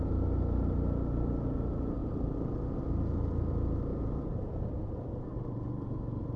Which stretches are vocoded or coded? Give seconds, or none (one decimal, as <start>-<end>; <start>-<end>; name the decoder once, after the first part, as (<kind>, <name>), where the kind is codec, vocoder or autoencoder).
2.0-2.8 (vocoder, BigVGAN v2); 3.9-4.8